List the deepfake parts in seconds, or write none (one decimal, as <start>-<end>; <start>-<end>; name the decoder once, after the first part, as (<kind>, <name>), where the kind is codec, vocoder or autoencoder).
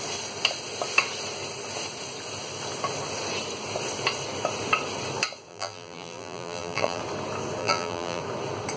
5.5-7.0 (vocoder, BigVGAN v2); 7.6-8.2